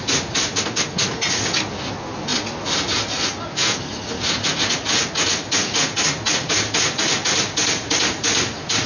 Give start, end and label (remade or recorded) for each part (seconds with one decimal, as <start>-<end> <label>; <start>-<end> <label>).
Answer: 0.0-8.9 recorded